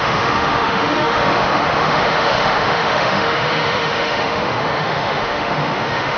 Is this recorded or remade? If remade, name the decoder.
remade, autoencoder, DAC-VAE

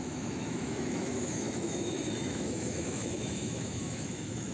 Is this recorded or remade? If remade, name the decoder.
remade, autoencoder, DAC-VAE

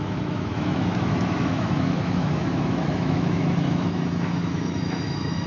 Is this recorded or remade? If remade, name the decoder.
remade, autoencoder, DAC-VAE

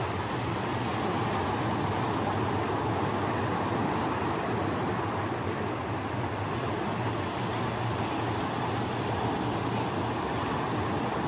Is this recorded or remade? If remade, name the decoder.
recorded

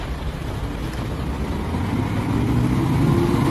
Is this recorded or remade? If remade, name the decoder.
recorded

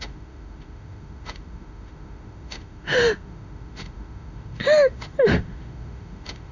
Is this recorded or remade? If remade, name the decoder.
remade, autoencoder, DAC-VAE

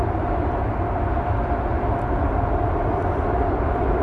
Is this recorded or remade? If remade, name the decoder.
recorded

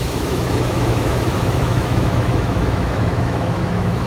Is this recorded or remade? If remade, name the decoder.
remade, autoencoder, DAC-VAE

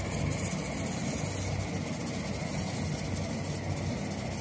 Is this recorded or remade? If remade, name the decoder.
recorded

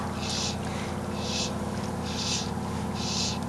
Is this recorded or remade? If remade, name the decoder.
recorded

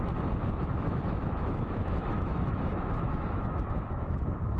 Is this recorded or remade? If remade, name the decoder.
remade, autoencoder, DAC-VAE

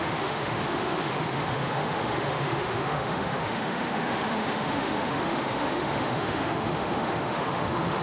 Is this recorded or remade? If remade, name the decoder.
remade, autoencoder, DAC-VAE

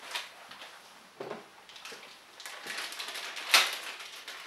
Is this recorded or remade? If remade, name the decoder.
recorded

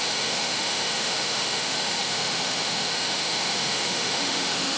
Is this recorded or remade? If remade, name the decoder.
remade, autoencoder, DAC-VAE